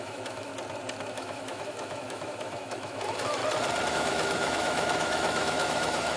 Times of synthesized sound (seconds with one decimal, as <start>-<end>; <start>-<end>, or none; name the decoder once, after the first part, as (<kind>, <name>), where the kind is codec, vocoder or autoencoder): 0.0-0.5 (autoencoder, DAC-VAE); 1.1-3.4; 3.9-6.2